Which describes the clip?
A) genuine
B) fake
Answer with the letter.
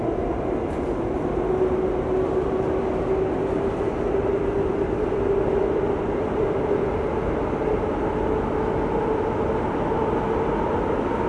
A